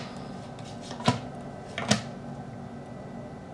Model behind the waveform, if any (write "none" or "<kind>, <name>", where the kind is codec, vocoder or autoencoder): none